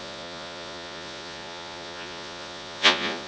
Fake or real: fake